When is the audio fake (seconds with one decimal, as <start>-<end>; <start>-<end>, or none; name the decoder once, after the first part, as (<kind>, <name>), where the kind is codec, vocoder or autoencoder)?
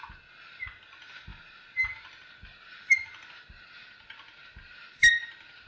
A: none